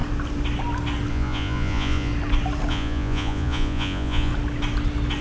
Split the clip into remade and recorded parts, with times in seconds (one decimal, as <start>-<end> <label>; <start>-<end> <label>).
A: 0.0-1.1 recorded; 1.1-2.1 remade; 2.1-2.7 recorded; 2.7-4.3 remade; 4.3-5.2 recorded